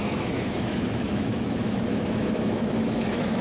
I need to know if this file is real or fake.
fake